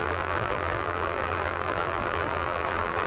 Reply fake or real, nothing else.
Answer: fake